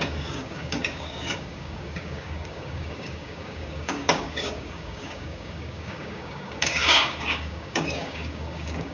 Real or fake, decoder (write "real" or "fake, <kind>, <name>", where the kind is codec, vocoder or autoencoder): fake, codec, DAC